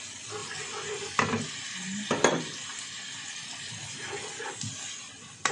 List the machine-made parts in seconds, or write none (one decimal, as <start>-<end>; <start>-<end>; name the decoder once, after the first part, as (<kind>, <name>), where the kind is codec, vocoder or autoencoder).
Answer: none

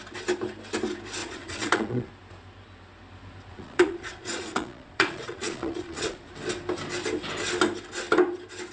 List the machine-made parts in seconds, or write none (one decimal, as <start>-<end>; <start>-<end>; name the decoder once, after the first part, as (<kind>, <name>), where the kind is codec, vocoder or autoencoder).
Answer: 1.2-2.1 (vocoder, Vocos); 3.5-6.3

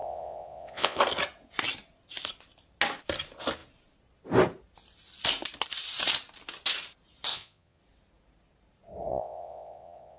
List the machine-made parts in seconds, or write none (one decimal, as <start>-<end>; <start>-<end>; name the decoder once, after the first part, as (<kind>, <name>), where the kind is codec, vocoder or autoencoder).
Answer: 0.0-1.0 (vocoder, Vocos); 7.3-7.8; 9.1-10.2

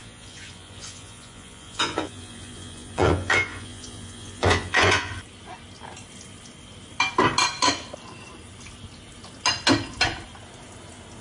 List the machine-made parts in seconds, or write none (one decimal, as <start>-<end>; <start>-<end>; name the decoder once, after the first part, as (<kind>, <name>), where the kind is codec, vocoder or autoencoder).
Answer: 0.0-5.1 (vocoder, Vocos)

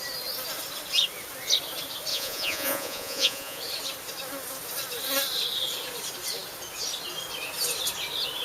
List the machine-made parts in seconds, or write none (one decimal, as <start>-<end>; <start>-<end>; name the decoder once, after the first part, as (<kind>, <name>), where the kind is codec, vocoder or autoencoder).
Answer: 2.1-3.6 (vocoder, Vocos)

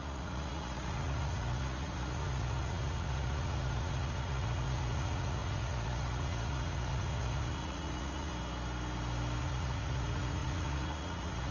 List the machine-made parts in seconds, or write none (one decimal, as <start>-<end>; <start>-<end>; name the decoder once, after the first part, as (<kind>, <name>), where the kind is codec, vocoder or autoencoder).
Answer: 0.0-8.3 (vocoder, Vocos); 9.4-11.5

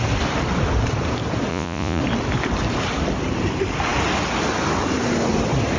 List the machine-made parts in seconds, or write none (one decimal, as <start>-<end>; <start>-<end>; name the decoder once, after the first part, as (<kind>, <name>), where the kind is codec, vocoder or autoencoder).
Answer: 1.5-2.0 (vocoder, Vocos)

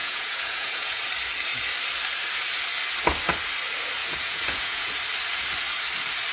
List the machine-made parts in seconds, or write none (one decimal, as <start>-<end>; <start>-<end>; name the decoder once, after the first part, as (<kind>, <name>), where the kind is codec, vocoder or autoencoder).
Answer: 0.0-1.0 (vocoder, Vocos); 4.0-4.9